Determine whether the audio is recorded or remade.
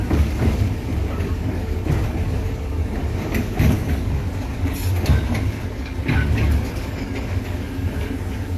remade